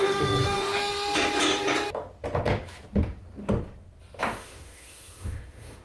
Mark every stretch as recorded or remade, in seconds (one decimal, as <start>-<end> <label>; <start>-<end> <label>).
0.0-0.9 remade; 0.9-4.2 recorded; 4.2-5.8 remade

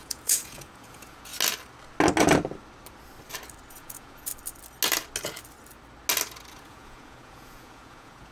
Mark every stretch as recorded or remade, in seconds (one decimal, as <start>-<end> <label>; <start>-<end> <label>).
0.0-1.3 remade; 1.3-3.7 recorded; 3.7-4.3 remade; 4.3-6.5 recorded; 6.5-8.3 remade

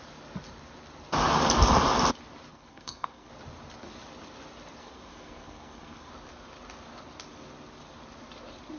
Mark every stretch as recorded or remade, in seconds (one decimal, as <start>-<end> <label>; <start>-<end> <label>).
0.0-2.5 recorded; 2.5-3.3 remade; 3.3-4.8 recorded; 4.8-6.1 remade; 6.1-8.8 recorded

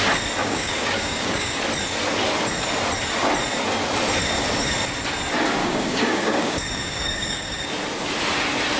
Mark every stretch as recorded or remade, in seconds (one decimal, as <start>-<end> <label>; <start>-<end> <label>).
0.0-0.4 recorded; 0.4-1.6 remade; 1.6-5.6 recorded; 5.6-7.7 remade; 7.7-8.8 recorded

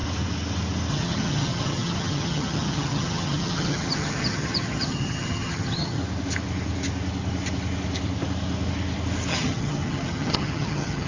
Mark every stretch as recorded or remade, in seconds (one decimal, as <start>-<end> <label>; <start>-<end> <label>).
0.0-0.9 recorded; 0.9-6.0 remade; 6.0-9.3 recorded; 9.3-11.1 remade

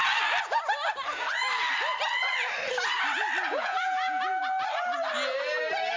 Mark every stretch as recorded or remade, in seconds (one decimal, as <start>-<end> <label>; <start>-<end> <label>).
0.0-3.5 recorded; 3.5-4.4 remade; 4.4-6.0 recorded